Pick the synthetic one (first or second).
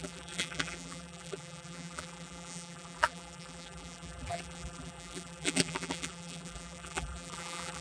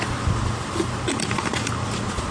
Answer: first